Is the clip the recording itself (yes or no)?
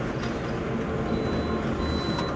yes